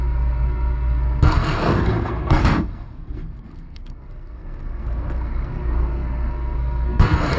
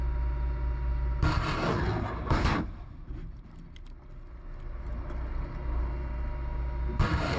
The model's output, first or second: first